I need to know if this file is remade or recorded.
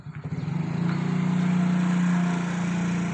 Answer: recorded